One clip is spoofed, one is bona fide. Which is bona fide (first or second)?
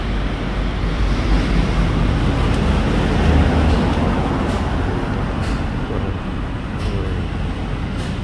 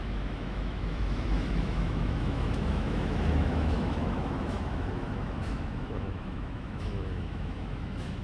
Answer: first